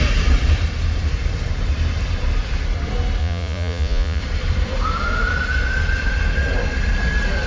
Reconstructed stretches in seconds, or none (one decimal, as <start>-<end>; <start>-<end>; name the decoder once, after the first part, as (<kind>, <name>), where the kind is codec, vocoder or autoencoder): 3.2-4.2 (vocoder, Vocos)